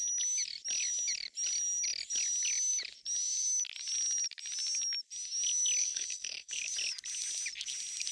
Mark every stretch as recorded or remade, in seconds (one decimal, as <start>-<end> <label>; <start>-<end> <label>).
0.0-5.8 recorded; 5.8-6.6 remade; 6.6-8.1 recorded